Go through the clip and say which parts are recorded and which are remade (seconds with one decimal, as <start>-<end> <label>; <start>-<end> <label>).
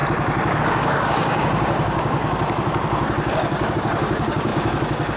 0.0-0.6 recorded; 0.6-2.2 remade; 2.2-3.7 recorded; 3.7-5.2 remade